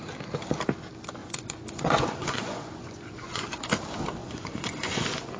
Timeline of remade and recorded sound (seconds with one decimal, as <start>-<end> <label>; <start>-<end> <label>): 0.0-1.2 recorded; 1.2-3.7 remade; 3.7-4.2 recorded; 4.2-5.4 remade